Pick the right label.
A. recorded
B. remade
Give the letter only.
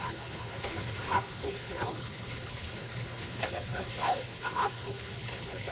B